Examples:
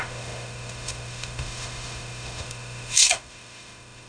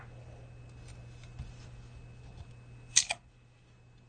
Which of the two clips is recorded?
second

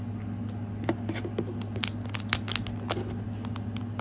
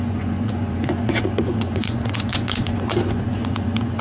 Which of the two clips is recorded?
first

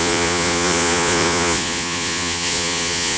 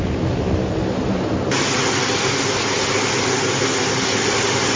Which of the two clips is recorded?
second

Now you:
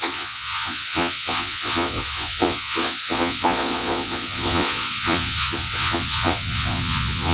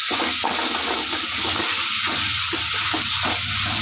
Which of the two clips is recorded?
second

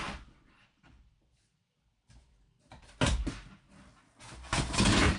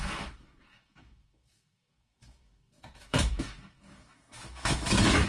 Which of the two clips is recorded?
first